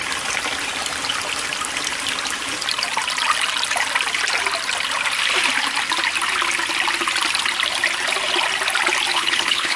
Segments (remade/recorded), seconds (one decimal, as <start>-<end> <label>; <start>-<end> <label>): 0.0-9.1 recorded; 9.1-9.8 remade